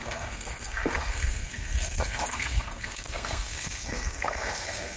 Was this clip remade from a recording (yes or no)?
yes